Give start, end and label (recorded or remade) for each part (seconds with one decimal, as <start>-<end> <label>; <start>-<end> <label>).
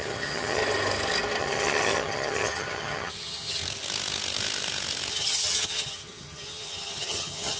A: 0.0-0.6 remade; 0.6-1.4 recorded; 1.4-3.6 remade; 3.6-5.1 recorded; 5.1-7.6 remade